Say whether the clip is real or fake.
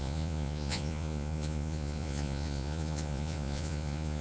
fake